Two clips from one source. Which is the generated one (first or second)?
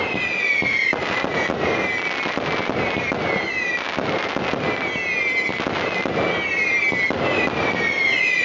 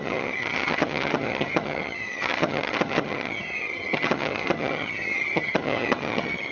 second